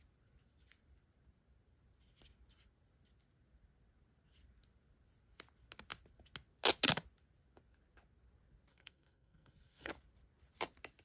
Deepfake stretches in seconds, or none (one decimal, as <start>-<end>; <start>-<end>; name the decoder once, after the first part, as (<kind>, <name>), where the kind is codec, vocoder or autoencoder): 8.7-9.9 (codec, SNAC)